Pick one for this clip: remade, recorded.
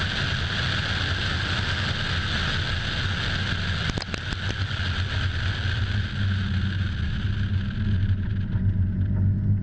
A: recorded